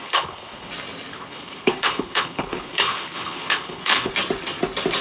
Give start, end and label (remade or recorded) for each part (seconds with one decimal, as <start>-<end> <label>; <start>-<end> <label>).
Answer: 0.0-0.7 remade; 0.7-1.1 recorded; 1.1-4.1 remade; 4.1-5.0 recorded